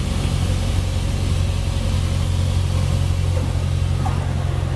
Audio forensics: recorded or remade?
recorded